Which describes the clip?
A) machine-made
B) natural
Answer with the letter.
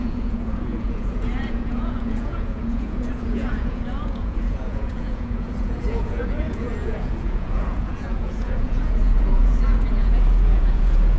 A